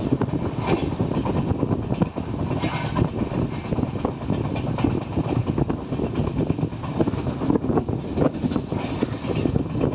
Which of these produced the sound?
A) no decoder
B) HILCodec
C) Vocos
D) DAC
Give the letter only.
A